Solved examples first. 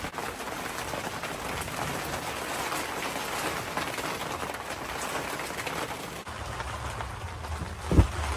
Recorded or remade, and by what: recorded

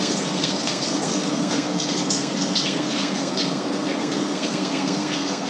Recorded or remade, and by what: remade, codec, SNAC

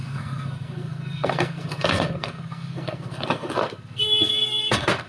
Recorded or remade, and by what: remade, codec, SNAC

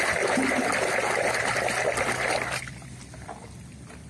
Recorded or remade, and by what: recorded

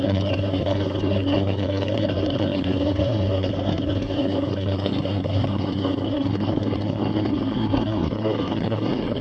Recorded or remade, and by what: remade, codec, SNAC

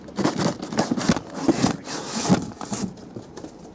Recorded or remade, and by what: recorded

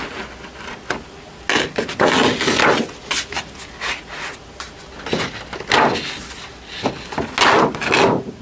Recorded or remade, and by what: recorded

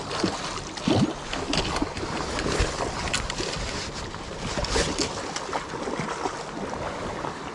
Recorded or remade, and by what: recorded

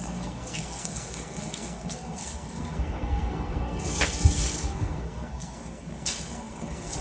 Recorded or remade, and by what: remade, codec, SNAC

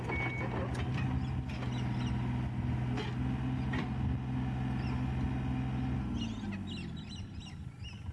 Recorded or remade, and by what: recorded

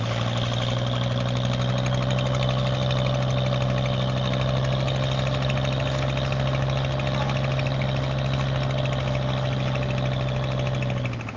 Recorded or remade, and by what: recorded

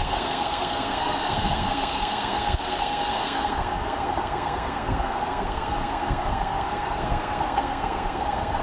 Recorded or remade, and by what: remade, codec, SNAC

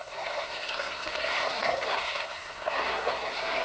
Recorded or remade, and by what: remade, codec, SNAC